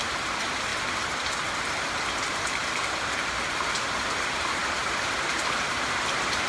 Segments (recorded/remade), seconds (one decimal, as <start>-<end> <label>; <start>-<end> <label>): 0.0-0.7 remade; 0.7-2.2 recorded; 2.2-2.6 remade; 2.6-3.5 recorded; 3.5-4.6 remade; 4.6-5.1 recorded; 5.1-6.5 remade